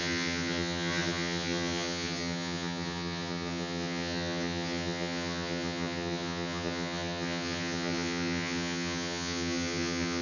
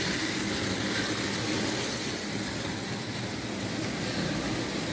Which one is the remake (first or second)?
first